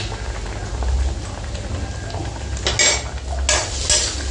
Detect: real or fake real